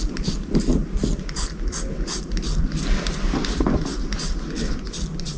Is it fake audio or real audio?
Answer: real